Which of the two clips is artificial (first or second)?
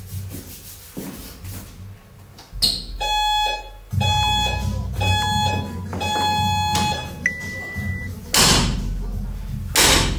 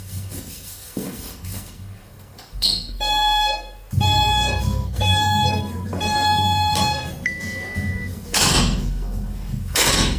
second